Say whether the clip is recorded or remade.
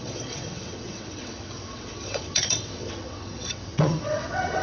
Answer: remade